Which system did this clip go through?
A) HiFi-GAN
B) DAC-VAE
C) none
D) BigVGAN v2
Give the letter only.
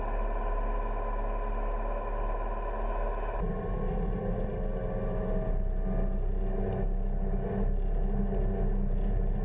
C